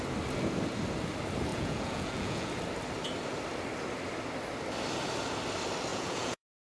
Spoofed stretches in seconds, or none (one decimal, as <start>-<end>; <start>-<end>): 1.5-2.5; 5.9-6.6